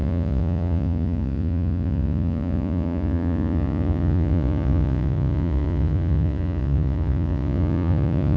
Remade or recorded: remade